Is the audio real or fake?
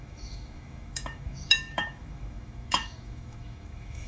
fake